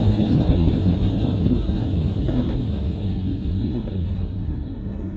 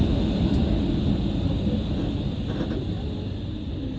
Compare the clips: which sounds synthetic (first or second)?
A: first